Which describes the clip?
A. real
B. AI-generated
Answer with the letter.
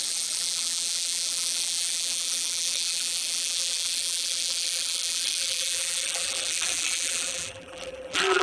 B